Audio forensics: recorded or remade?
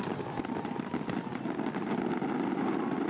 recorded